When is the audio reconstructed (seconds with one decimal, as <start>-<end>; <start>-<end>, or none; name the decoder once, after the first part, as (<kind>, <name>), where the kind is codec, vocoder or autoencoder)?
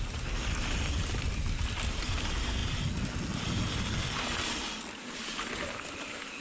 none